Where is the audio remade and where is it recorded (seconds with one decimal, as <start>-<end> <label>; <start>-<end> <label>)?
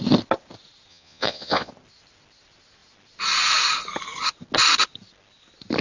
0.0-0.9 recorded; 0.9-1.7 remade; 1.7-5.8 recorded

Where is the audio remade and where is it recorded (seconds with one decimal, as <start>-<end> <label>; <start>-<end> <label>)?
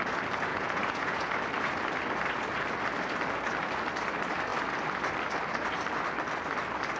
0.0-0.5 recorded; 0.5-1.3 remade; 1.3-7.0 recorded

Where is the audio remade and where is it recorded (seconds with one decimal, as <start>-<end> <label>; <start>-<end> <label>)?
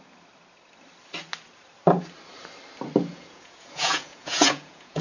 0.0-3.1 recorded; 3.1-5.0 remade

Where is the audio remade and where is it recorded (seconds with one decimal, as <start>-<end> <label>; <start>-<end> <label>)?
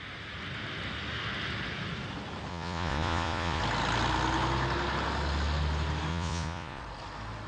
0.0-2.5 recorded; 2.5-3.6 remade; 3.6-6.1 recorded; 6.1-6.8 remade; 6.8-7.5 recorded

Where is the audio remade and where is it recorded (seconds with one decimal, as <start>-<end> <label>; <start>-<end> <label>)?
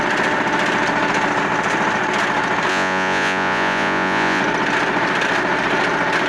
0.0-2.7 recorded; 2.7-4.4 remade; 4.4-6.3 recorded